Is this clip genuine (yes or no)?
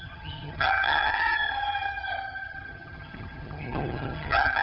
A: no